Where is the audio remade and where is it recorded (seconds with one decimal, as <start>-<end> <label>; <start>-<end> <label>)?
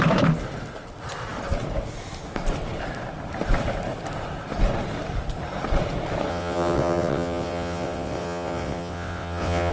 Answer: 0.0-6.3 recorded; 6.3-9.7 remade